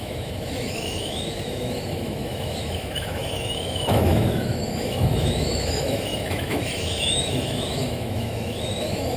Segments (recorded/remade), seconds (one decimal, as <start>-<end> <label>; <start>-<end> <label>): 0.0-9.2 remade